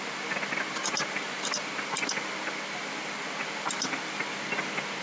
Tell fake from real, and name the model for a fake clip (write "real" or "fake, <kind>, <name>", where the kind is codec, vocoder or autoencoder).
real